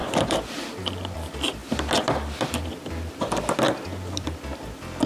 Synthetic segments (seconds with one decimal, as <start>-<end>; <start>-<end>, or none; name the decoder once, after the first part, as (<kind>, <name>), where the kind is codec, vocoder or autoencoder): 0.0-0.8 (vocoder, BigVGAN v2); 1.6-3.1